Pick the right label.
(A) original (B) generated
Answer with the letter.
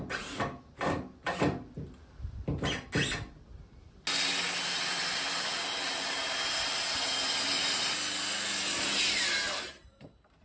A